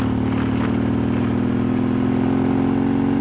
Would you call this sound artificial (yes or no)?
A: no